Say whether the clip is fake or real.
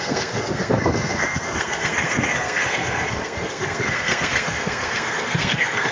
fake